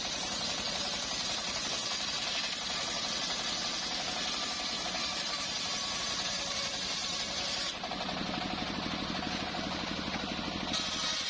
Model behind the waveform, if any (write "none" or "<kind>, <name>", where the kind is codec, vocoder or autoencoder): none